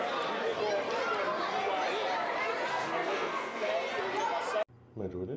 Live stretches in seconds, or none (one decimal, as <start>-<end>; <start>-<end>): 0.0-2.7; 3.7-5.4